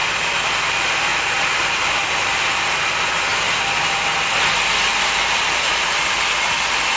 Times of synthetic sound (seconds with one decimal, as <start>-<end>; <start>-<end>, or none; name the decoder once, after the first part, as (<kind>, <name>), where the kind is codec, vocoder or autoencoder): 1.1-2.9 (vocoder, BigVGAN v2); 4.9-6.3